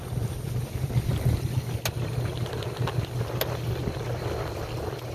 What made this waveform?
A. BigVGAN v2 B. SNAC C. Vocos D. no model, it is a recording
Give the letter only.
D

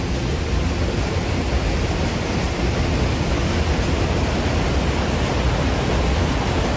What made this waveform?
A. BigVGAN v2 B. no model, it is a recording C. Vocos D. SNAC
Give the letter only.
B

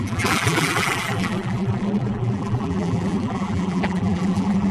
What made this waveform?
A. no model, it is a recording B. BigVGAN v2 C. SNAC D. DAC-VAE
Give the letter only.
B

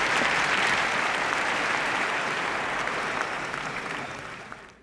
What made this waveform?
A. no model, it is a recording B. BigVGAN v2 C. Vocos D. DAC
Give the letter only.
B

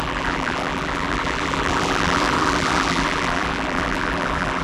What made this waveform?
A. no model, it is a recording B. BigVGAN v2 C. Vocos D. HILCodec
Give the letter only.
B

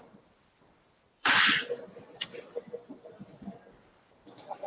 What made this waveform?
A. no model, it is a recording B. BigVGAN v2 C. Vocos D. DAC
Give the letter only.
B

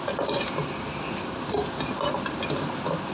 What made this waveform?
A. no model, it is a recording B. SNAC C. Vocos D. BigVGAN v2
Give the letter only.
A